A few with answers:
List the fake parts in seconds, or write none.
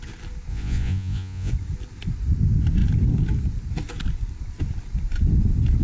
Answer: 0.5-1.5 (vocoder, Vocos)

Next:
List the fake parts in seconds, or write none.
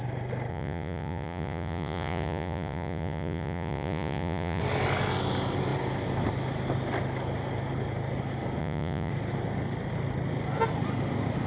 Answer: 0.5-4.6 (vocoder, Vocos); 8.6-9.1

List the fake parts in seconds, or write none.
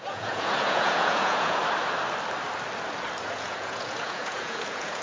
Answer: 0.0-1.6 (vocoder, Vocos); 3.2-5.0